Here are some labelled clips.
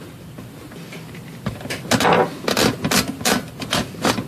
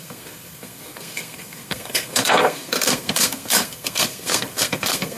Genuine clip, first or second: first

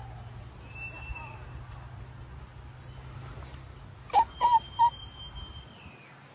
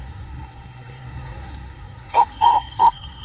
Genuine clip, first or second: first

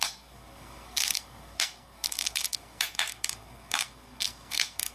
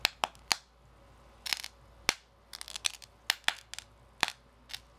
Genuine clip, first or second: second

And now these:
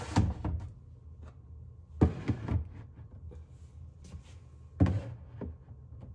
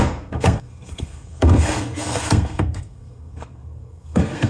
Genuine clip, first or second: first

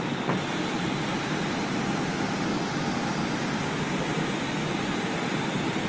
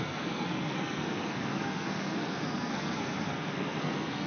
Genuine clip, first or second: first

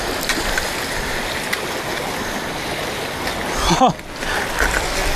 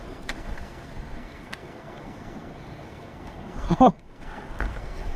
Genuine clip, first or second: first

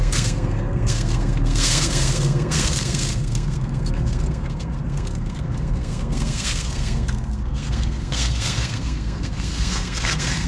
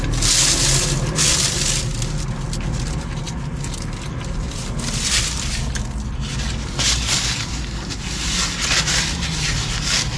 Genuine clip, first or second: second